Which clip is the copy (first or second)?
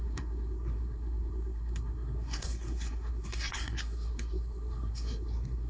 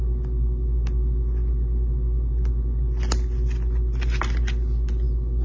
first